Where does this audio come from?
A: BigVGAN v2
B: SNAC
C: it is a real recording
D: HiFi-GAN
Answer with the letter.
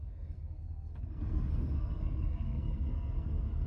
B